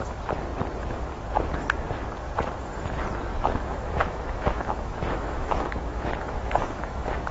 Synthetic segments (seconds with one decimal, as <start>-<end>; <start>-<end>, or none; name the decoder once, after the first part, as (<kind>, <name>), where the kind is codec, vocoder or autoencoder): 3.3-7.3 (autoencoder, DAC-VAE)